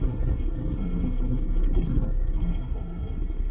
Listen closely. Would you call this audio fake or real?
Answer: fake